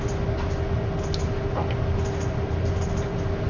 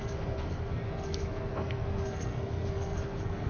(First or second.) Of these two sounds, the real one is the first